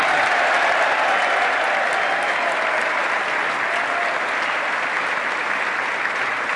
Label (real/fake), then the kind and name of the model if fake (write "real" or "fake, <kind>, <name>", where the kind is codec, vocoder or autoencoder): real